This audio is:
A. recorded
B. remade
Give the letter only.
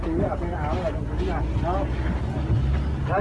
A